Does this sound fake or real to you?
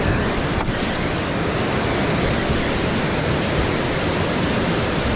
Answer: fake